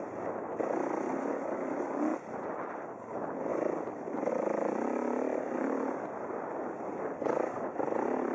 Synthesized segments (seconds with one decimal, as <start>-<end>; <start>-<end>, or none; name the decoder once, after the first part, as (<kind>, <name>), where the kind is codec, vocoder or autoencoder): 2.1-3.0 (vocoder, BigVGAN v2); 3.5-4.3